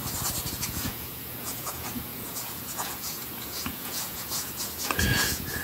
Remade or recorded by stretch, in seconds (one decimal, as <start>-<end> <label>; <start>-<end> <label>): 0.0-0.5 recorded; 0.5-5.6 remade